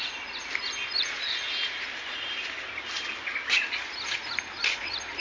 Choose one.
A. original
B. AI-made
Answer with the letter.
A